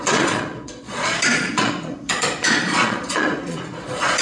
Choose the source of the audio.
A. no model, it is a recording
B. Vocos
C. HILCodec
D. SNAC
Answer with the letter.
B